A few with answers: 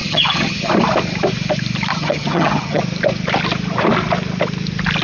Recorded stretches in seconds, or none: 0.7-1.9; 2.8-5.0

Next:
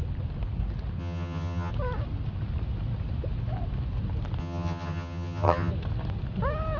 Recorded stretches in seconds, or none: 0.0-1.0; 1.7-4.4; 5.7-6.8

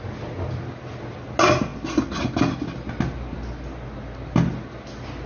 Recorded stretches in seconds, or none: 0.0-5.3

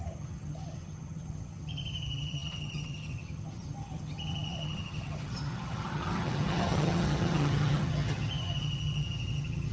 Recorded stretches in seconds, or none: none